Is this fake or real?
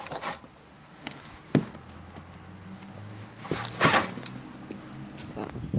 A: real